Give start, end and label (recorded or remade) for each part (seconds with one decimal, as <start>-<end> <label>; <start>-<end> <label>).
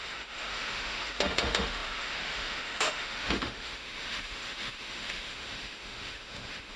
0.0-6.8 remade